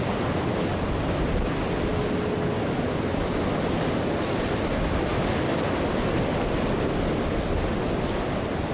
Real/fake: real